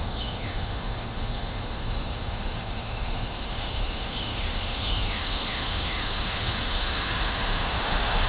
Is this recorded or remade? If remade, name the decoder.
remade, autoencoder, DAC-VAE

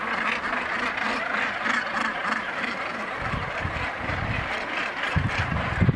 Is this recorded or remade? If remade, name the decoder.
recorded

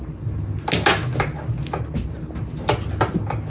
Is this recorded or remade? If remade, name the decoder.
recorded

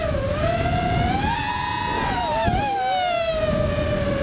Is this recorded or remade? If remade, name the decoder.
recorded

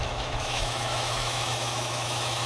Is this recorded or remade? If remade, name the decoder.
remade, autoencoder, DAC-VAE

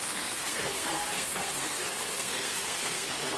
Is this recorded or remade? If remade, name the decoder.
remade, codec, SNAC